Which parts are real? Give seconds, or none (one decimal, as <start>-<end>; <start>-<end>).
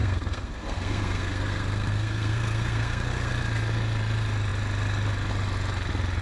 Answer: 3.3-6.2